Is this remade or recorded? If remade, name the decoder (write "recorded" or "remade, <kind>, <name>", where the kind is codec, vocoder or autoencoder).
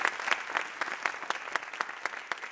recorded